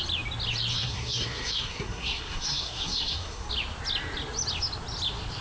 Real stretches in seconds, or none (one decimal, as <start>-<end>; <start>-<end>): 0.0-0.7; 3.5-5.4